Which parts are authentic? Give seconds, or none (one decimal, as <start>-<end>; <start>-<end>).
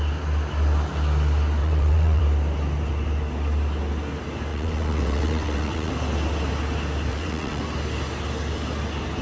0.0-1.6; 2.2-4.5; 5.9-7.1; 7.6-9.2